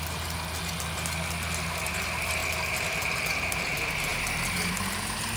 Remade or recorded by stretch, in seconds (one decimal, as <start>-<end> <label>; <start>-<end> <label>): 0.0-5.4 recorded